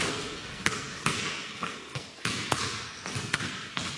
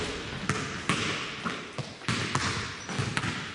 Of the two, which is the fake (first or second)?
first